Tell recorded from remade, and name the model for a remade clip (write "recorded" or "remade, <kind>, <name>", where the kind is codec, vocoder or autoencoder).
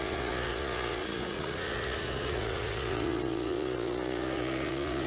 remade, vocoder, Vocos